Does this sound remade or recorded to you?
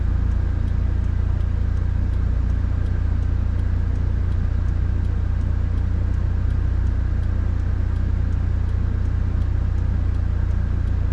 recorded